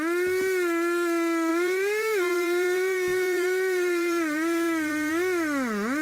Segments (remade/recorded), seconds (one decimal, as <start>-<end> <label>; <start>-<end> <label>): 0.0-1.5 recorded; 1.5-5.1 remade; 5.1-6.0 recorded